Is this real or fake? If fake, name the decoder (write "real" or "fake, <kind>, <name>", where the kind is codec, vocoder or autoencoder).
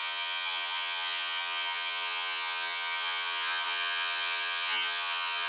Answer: fake, vocoder, HiFi-GAN